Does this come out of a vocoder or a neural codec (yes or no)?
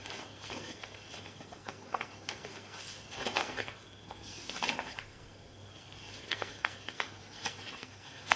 yes